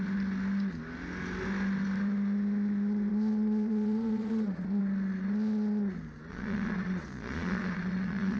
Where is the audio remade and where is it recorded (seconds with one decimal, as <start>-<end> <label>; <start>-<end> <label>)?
0.0-3.1 recorded; 3.1-4.8 remade; 4.8-6.3 recorded; 6.3-8.4 remade